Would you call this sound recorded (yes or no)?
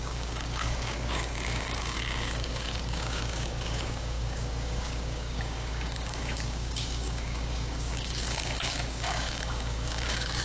no